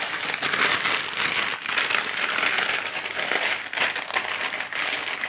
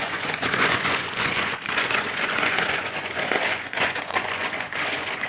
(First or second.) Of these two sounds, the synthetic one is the second